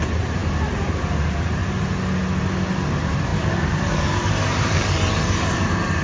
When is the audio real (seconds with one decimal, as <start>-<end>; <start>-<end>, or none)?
1.6-2.9